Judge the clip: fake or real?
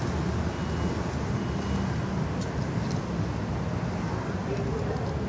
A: real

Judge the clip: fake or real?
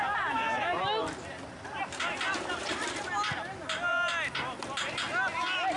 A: real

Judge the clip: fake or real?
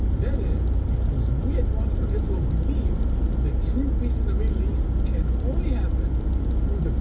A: real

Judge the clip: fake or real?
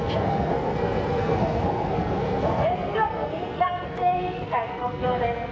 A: fake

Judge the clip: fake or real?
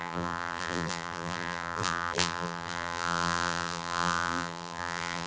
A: fake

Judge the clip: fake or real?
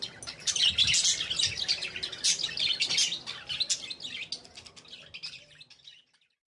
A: real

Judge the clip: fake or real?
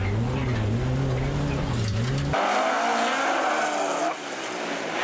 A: real